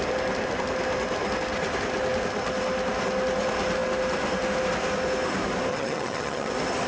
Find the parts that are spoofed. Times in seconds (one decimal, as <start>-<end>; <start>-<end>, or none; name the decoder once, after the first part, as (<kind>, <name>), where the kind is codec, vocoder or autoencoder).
5.7-6.5 (vocoder, HiFi-GAN)